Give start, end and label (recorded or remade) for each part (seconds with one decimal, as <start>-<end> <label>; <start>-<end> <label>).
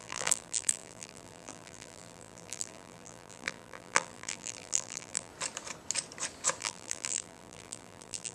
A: 0.0-5.3 remade; 5.3-6.6 recorded; 6.6-8.3 remade